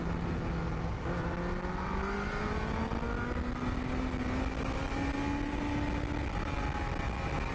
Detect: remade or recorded recorded